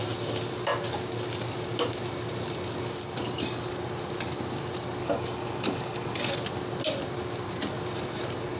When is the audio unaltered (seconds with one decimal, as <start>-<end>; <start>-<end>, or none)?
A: 0.0-5.0; 6.3-8.6